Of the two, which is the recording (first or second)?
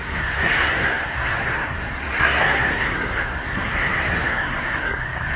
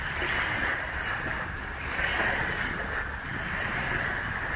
second